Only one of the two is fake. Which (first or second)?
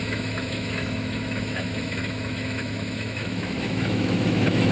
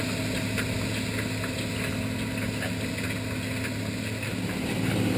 first